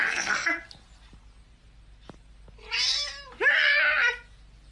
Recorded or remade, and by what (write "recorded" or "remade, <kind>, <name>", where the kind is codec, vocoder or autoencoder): recorded